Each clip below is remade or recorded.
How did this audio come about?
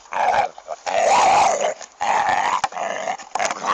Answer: recorded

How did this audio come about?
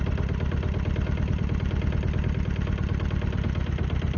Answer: recorded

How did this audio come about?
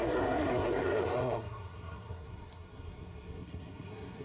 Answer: remade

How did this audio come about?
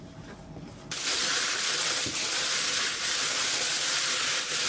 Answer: remade